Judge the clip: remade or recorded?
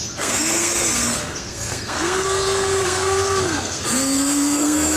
remade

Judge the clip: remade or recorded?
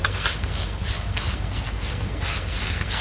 remade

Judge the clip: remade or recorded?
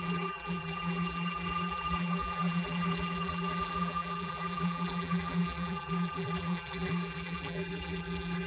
remade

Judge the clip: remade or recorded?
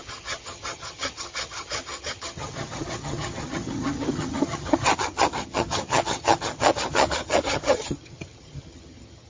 remade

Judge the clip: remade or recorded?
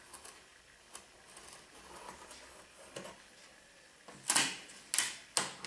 recorded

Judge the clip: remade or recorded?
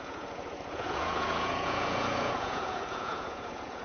remade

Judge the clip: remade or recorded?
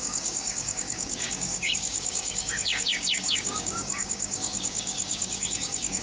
remade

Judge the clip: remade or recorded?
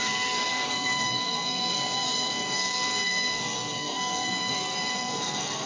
remade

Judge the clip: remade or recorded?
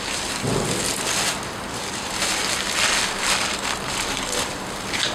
recorded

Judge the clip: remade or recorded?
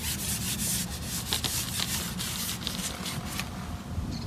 recorded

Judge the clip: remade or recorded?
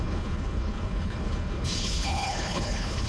remade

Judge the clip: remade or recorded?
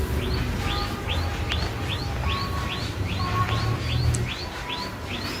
recorded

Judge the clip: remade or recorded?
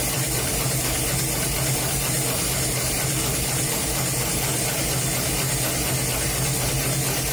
recorded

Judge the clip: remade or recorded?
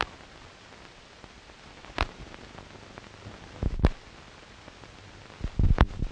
recorded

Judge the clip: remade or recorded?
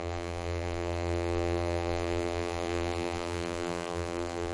remade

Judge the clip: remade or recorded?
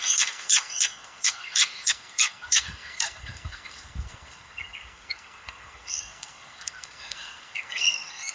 remade